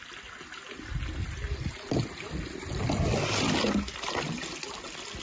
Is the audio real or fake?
real